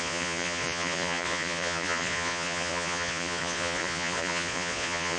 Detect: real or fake fake